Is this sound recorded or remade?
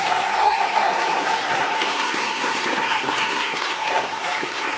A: remade